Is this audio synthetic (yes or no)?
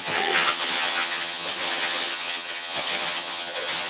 yes